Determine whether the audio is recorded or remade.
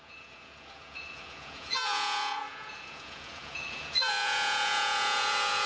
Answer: remade